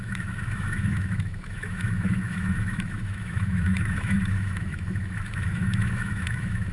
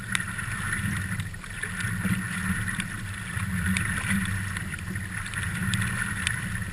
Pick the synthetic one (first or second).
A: first